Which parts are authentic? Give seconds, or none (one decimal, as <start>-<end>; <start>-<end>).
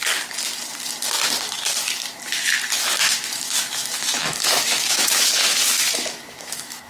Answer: 0.0-2.8